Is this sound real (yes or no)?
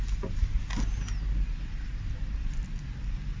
yes